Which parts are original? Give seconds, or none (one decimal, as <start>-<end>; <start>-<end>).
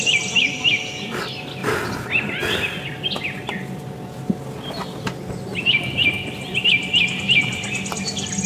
0.0-8.5